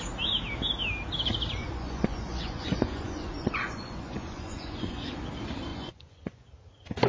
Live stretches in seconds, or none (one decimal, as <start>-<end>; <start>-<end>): 0.0-1.6; 5.1-5.7; 6.5-7.1